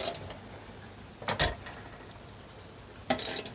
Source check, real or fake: real